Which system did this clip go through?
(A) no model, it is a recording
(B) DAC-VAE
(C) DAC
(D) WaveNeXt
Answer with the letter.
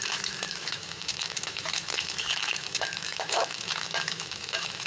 B